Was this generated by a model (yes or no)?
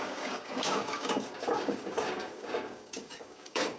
yes